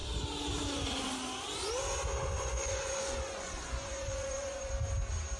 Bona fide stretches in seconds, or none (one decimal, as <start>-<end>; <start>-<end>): 0.0-2.2; 4.7-5.4